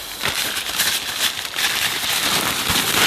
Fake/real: real